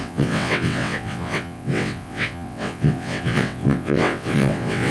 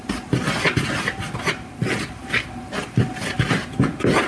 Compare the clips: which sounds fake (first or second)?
first